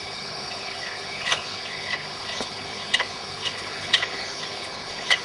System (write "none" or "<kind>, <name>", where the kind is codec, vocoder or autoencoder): codec, HILCodec